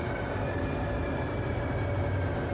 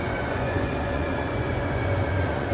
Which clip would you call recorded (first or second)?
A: first